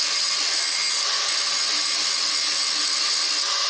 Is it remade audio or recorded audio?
recorded